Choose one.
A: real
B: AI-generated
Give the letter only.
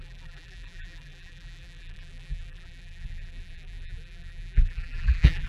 B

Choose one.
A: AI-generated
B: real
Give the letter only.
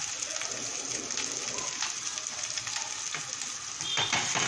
B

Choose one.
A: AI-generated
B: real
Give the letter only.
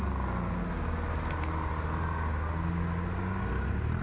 B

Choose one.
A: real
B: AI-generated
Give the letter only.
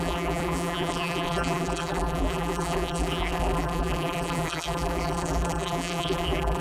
B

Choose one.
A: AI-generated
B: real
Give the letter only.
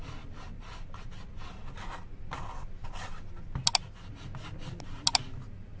B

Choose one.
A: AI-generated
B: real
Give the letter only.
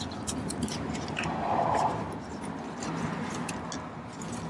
B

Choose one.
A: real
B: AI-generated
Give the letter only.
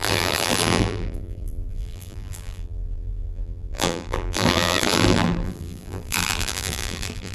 B